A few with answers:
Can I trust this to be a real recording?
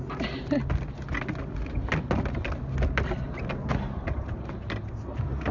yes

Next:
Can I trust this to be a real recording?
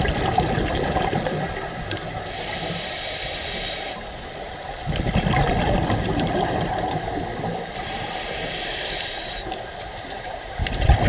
no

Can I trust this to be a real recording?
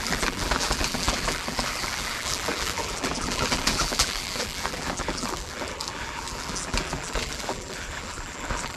no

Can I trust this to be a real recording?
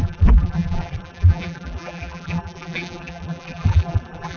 no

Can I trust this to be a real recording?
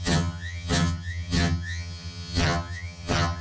no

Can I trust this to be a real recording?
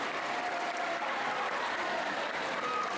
yes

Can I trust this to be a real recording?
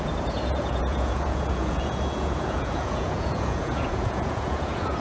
no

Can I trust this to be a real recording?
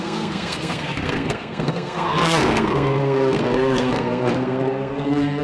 no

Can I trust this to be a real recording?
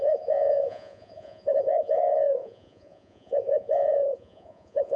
no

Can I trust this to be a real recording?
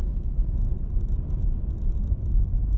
yes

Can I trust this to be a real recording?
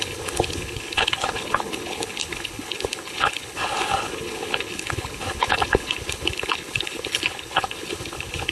no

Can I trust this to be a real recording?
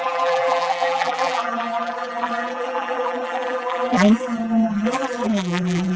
no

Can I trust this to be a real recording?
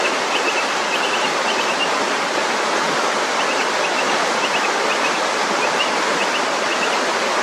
yes